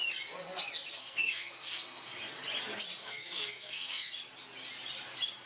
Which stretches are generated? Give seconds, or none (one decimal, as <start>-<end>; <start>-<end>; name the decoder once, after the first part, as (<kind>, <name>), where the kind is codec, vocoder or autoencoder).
1.0-2.1 (codec, SNAC); 3.0-4.1